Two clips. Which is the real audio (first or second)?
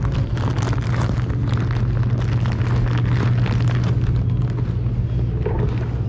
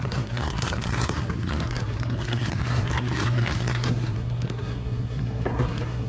first